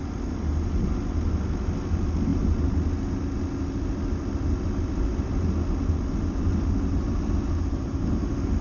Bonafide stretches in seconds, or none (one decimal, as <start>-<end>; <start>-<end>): 0.0-8.6